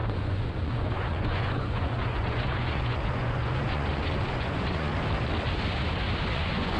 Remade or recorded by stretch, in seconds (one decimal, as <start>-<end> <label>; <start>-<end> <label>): 0.0-4.9 remade; 4.9-6.3 recorded; 6.3-6.8 remade